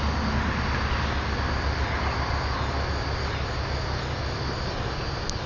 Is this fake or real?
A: real